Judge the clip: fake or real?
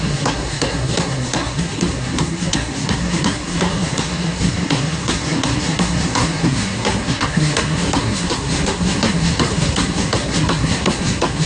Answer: fake